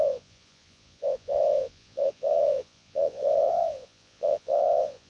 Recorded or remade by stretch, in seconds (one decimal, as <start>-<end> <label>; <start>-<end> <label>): 0.0-5.1 remade